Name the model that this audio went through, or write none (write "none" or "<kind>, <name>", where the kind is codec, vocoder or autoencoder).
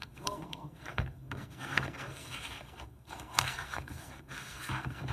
codec, SNAC